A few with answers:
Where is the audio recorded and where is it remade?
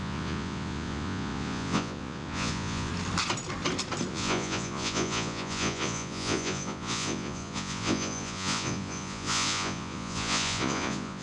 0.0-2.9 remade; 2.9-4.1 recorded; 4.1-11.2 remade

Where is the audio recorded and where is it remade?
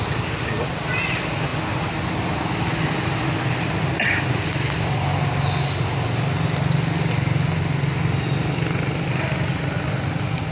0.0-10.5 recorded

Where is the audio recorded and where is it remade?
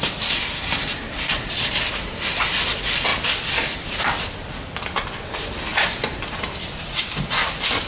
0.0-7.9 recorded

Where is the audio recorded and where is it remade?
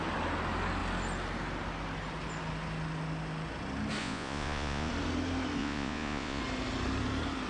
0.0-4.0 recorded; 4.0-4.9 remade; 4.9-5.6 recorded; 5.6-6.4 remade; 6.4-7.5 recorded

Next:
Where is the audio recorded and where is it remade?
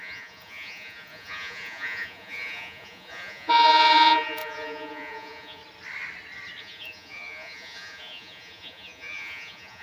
0.0-5.6 remade; 5.6-6.6 recorded; 6.6-9.8 remade